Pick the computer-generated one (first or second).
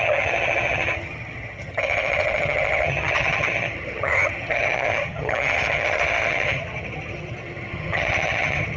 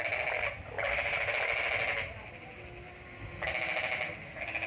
first